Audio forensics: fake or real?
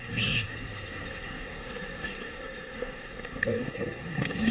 fake